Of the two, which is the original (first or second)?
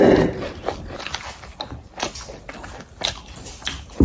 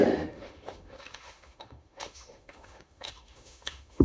first